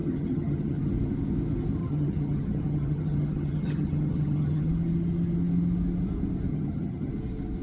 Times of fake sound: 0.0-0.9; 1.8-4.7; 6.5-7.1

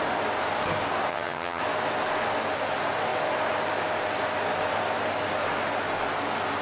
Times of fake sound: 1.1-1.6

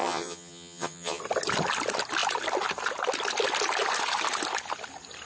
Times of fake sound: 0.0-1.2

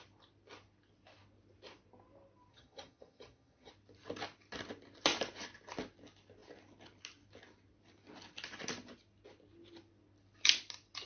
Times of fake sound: 2.5-3.7